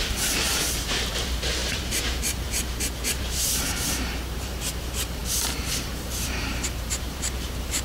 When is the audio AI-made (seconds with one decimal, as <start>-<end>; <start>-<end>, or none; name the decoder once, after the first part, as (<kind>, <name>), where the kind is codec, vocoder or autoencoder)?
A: 0.0-5.2 (vocoder, BigVGAN v2); 5.9-7.8